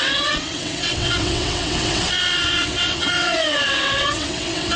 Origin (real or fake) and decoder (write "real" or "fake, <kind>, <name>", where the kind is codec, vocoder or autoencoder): fake, vocoder, WaveNeXt